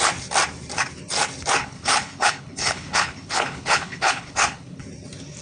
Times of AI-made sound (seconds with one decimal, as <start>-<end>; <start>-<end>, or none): 1.6-4.8